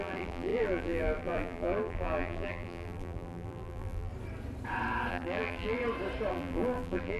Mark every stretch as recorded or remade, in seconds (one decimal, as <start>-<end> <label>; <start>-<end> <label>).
0.0-4.1 remade; 4.1-5.1 recorded; 5.1-5.8 remade; 5.8-6.3 recorded; 6.3-7.2 remade